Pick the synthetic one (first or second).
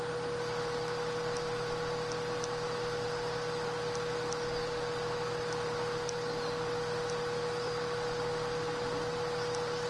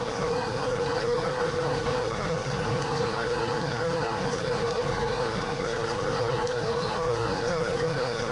second